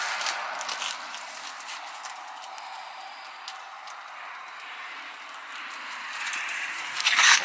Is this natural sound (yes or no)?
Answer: no